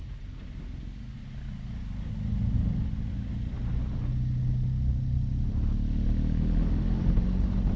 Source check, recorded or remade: recorded